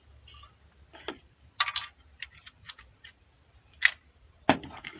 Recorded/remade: recorded